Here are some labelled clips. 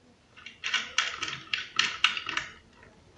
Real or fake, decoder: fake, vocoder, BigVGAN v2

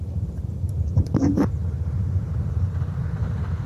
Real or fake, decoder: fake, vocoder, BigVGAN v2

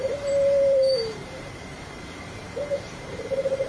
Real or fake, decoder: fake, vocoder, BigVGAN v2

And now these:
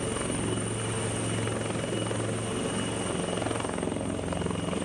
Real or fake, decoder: real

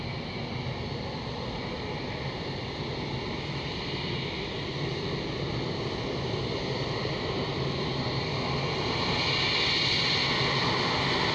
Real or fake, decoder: real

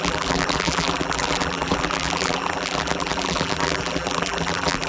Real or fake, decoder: fake, vocoder, BigVGAN v2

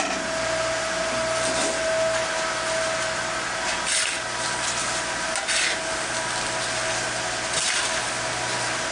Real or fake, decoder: real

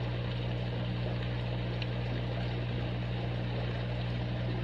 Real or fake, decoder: real